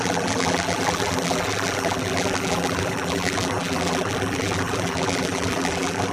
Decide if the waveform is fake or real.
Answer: fake